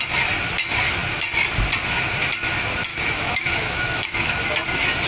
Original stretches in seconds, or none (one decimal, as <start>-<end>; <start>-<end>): 0.0-2.9; 4.4-5.1